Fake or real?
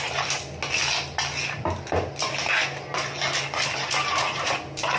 real